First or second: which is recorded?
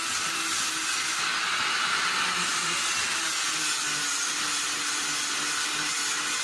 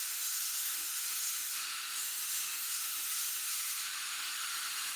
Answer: first